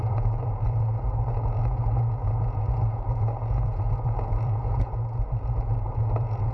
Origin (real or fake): fake